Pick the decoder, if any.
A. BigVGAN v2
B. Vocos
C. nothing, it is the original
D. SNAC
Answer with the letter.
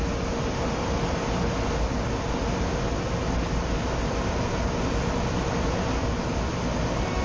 C